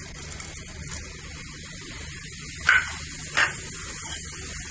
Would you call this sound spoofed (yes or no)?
no